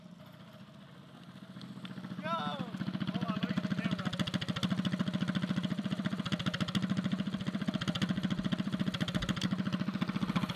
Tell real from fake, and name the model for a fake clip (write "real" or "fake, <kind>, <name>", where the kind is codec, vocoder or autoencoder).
real